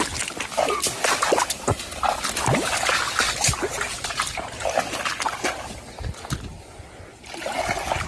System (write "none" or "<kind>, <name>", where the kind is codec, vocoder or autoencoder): none